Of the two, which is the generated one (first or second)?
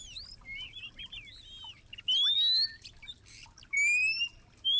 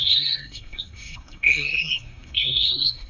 second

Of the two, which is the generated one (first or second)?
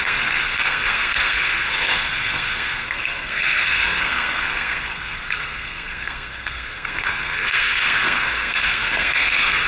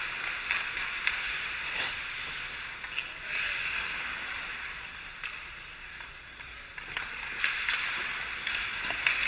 first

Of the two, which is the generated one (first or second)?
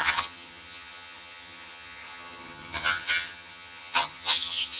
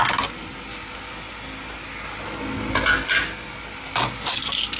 first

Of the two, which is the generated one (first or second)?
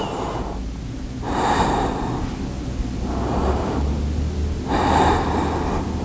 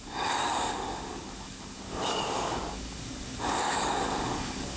second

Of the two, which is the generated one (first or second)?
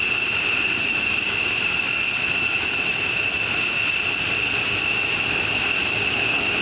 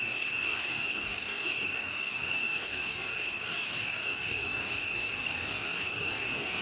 second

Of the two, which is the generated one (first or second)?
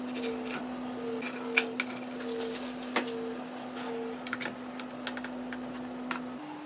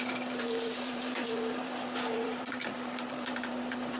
second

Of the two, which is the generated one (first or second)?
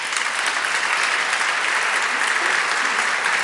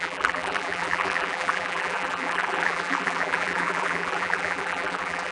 second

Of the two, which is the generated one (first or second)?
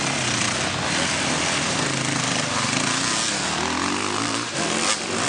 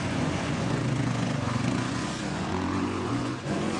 second